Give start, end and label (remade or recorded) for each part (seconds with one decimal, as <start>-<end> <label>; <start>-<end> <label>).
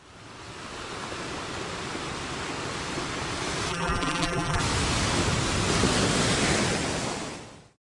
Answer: 0.0-3.7 recorded; 3.7-4.6 remade; 4.6-8.0 recorded